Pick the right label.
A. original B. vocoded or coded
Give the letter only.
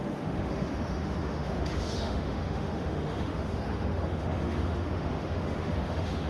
B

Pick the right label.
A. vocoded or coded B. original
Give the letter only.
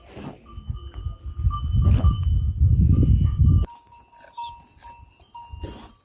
B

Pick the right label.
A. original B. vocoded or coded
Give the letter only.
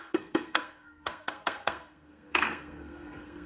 B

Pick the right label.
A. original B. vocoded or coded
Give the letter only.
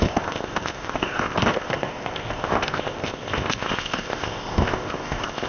B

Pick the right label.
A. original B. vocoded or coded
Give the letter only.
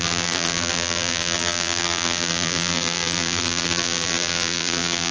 B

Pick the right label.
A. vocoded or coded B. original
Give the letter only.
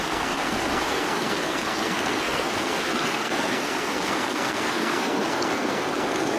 A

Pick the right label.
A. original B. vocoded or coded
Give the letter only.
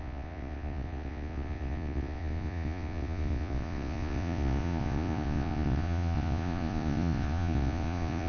B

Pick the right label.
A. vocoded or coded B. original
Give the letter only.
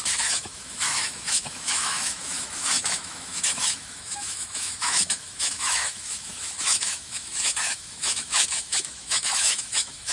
A